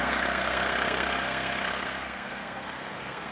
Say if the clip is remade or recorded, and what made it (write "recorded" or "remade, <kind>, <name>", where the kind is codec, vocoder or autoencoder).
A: remade, codec, SNAC